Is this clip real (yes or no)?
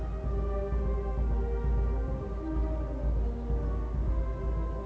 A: yes